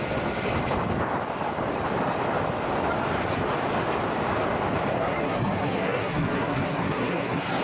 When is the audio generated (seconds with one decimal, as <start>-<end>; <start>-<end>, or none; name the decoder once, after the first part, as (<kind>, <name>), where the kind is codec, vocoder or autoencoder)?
5.0-7.6 (codec, SNAC)